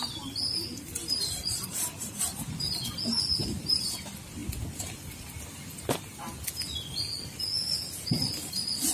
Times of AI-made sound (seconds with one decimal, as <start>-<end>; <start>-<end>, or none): none